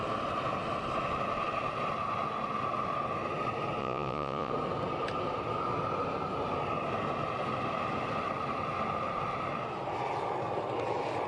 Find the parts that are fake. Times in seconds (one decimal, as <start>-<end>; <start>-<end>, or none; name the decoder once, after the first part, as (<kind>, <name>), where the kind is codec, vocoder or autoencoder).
3.8-4.5 (vocoder, Vocos)